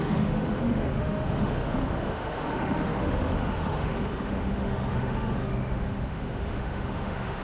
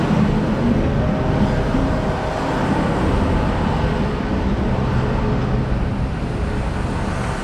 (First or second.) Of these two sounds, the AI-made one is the first